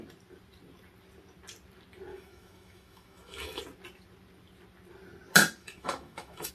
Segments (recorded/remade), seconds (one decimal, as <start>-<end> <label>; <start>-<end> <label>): 0.0-2.1 recorded; 2.1-3.6 remade; 3.6-5.6 recorded; 5.6-6.5 remade